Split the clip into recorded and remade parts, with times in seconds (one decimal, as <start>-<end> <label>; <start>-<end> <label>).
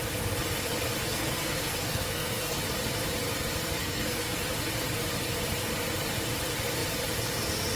0.0-1.1 recorded; 1.1-2.6 remade; 2.6-3.8 recorded; 3.8-4.4 remade; 4.4-7.8 recorded